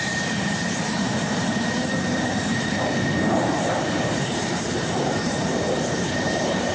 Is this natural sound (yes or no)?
no